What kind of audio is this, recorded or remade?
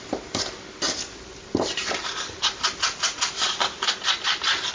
recorded